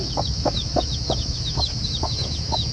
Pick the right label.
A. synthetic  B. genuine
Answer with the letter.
A